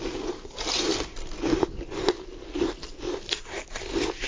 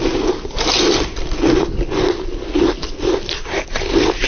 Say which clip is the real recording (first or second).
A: first